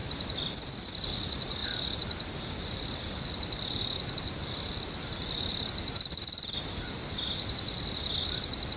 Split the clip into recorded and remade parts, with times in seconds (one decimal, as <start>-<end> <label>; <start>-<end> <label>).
0.0-8.8 recorded